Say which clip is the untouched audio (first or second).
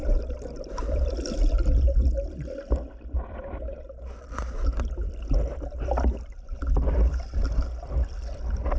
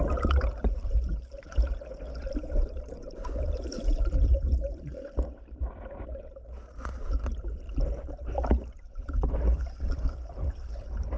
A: first